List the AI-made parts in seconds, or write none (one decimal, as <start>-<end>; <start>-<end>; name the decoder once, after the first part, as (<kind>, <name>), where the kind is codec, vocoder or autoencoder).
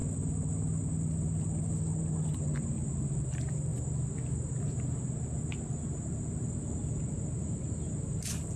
none